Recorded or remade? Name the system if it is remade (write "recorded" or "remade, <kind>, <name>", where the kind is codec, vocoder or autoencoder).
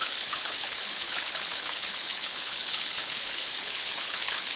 remade, codec, HILCodec